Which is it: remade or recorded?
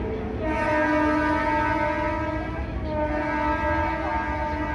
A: recorded